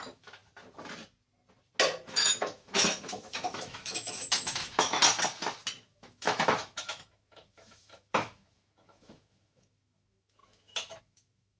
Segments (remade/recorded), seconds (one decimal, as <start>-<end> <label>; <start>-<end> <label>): 0.0-0.4 remade; 0.4-2.1 recorded; 2.1-5.0 remade; 5.0-5.8 recorded; 5.8-11.6 remade